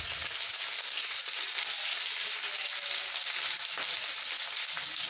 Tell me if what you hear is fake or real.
real